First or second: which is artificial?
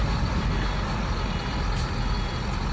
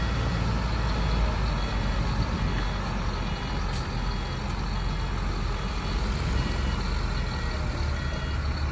first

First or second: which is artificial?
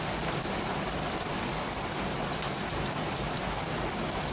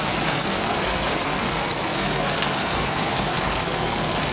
second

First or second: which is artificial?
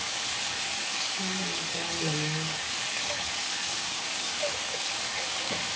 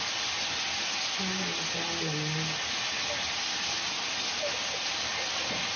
first